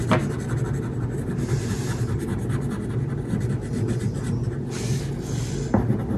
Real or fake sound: real